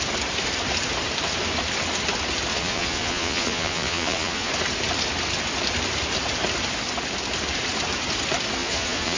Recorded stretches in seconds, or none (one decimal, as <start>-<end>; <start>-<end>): 0.0-2.5; 4.5-8.6